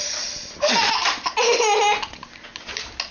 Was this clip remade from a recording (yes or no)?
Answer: no